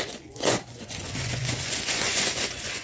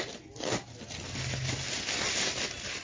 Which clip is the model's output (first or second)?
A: first